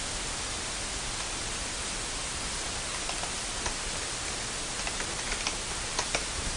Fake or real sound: real